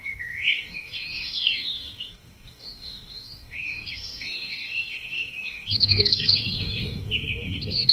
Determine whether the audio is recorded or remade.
remade